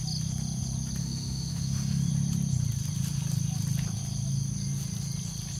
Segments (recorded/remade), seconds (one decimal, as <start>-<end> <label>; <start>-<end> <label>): 0.0-1.0 recorded; 1.0-2.1 remade; 2.1-5.6 recorded